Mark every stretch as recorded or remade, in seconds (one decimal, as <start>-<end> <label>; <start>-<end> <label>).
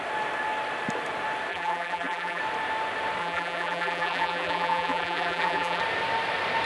0.0-1.5 recorded; 1.5-2.4 remade; 2.4-3.2 recorded; 3.2-5.8 remade; 5.8-6.7 recorded